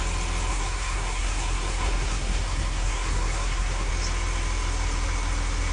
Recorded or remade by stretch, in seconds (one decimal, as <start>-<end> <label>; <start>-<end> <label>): 0.0-0.5 recorded; 0.5-3.9 remade; 3.9-5.7 recorded